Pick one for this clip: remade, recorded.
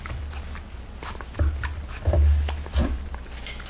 recorded